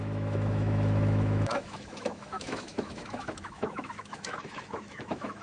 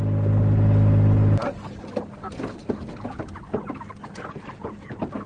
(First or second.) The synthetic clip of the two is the first